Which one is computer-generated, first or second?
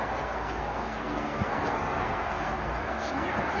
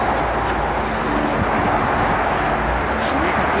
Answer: first